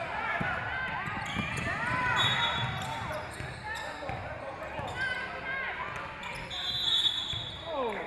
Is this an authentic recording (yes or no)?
yes